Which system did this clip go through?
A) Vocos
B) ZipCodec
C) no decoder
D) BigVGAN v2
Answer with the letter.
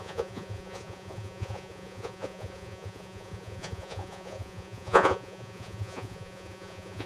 A